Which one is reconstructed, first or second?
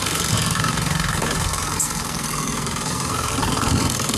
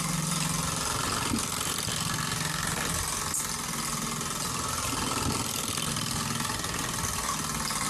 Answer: first